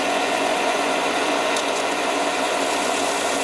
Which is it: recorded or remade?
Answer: remade